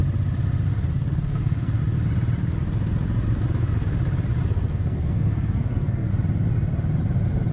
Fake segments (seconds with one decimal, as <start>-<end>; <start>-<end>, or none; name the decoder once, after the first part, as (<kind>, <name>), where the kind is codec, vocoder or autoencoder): 1.1-1.8 (codec, SNAC); 4.7-6.1